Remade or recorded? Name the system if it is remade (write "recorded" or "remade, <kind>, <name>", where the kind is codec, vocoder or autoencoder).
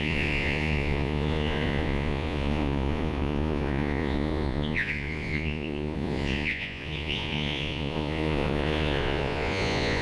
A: remade, vocoder, Vocos